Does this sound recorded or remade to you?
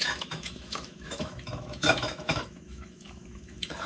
remade